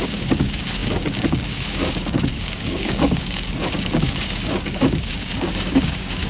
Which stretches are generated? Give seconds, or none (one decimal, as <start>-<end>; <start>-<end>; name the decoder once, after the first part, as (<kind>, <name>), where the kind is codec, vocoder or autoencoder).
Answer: 0.0-6.3 (codec, DAC)